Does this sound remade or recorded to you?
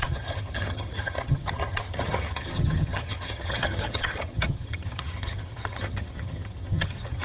remade